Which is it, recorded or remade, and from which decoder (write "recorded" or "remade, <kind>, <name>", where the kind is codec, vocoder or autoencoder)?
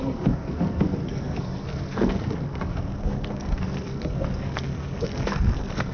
remade, codec, SNAC